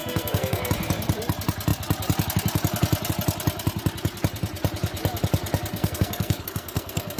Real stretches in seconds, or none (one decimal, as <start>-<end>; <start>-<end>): 0.7-5.7